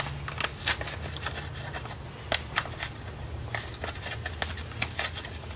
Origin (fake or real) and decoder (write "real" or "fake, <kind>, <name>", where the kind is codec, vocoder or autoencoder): real